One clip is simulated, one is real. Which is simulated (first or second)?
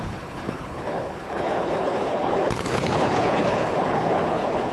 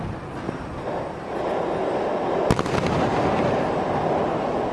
first